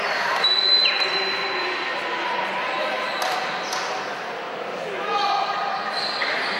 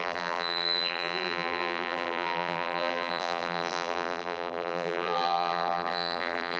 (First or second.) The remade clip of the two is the second